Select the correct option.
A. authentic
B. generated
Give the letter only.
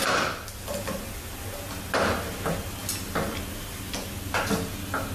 A